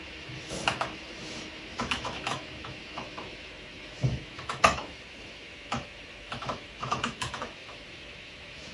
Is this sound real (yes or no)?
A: no